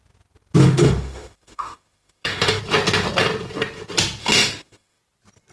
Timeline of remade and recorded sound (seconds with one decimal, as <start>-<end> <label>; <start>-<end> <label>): 0.0-0.6 recorded; 0.6-2.6 remade; 2.6-4.2 recorded; 4.2-5.0 remade; 5.0-5.5 recorded